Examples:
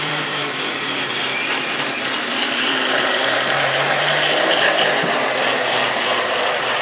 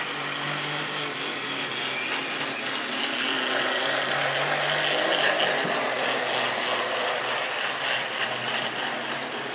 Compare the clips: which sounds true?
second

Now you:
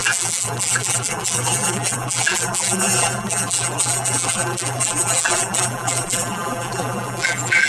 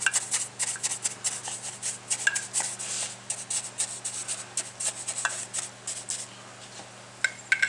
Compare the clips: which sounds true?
second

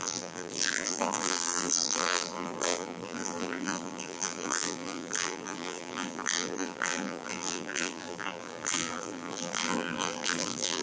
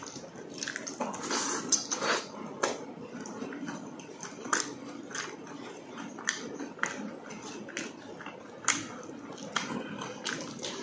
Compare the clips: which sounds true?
second